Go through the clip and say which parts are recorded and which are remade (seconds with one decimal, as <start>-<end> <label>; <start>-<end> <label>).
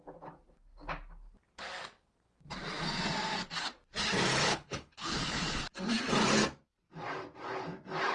0.0-4.5 recorded; 4.5-5.6 remade; 5.6-8.1 recorded